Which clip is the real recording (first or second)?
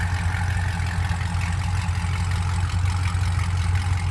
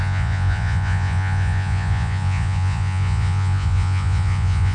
first